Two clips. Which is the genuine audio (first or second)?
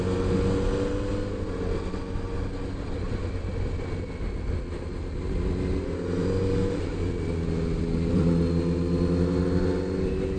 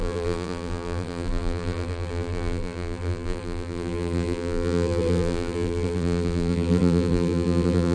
first